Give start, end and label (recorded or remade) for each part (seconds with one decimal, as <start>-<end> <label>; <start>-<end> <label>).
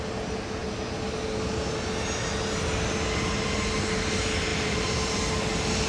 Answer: 0.0-4.5 recorded; 4.5-5.3 remade; 5.3-5.9 recorded